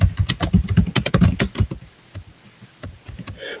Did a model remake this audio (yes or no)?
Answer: no